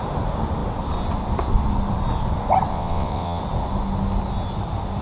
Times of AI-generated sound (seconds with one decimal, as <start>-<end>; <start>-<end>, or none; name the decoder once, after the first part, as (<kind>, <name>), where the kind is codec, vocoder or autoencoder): 2.7-3.4 (vocoder, WaveNeXt)